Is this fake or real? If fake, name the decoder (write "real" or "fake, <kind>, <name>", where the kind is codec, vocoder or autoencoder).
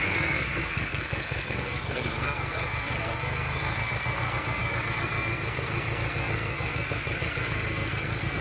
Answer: fake, codec, SNAC